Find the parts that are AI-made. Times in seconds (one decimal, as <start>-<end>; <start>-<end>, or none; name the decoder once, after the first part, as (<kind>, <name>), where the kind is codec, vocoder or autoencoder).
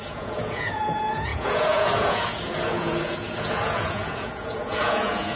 0.0-5.4 (vocoder, Vocos)